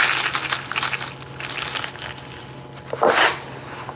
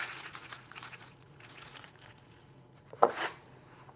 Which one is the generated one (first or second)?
second